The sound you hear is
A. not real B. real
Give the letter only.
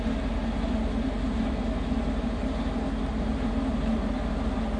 B